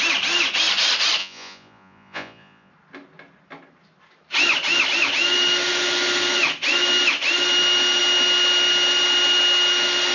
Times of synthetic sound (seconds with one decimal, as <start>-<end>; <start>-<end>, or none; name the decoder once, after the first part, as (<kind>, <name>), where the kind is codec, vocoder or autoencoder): 1.2-2.7 (vocoder, Vocos)